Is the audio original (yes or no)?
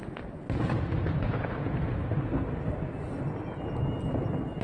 yes